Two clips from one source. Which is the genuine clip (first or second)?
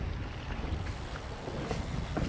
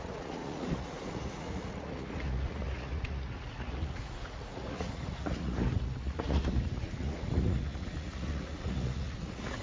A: first